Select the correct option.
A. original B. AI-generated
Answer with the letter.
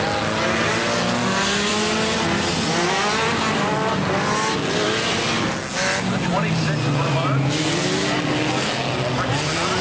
A